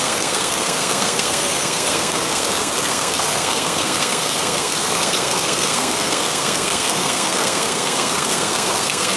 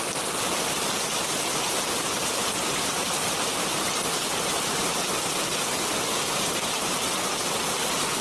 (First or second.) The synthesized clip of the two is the first